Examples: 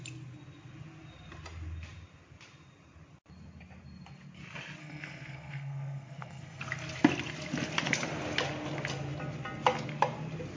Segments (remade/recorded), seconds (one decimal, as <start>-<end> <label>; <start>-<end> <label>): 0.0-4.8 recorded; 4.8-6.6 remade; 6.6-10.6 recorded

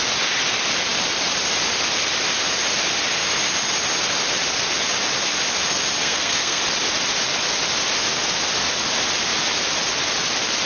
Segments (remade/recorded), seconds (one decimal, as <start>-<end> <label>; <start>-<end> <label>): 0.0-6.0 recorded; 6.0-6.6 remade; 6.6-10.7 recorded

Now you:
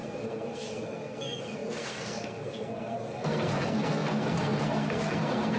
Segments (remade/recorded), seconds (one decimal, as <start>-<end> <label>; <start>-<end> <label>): 0.0-5.6 remade